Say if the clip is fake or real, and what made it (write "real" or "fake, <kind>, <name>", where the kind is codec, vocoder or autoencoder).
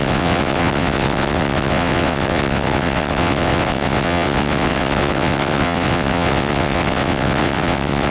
fake, vocoder, WaveNeXt